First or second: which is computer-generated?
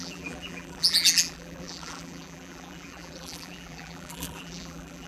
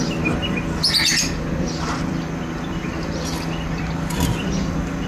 first